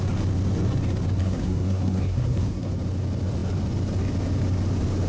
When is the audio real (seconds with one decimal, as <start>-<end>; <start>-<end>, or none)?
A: 0.0-1.2; 2.7-5.1